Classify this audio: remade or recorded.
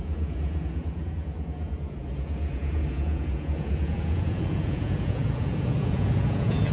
remade